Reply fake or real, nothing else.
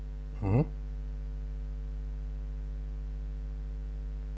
real